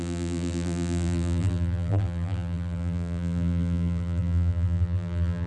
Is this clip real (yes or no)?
no